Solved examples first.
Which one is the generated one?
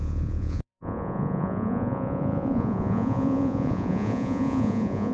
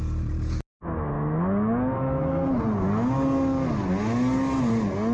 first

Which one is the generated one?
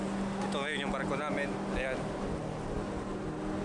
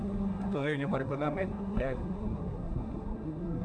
second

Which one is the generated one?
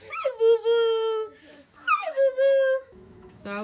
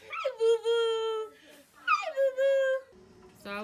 first